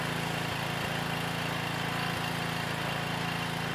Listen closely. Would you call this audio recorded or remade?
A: recorded